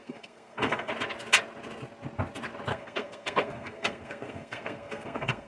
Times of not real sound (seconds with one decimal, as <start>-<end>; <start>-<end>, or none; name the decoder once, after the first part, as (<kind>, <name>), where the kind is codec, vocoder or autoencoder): 0.0-0.9 (codec, SNAC); 2.7-5.5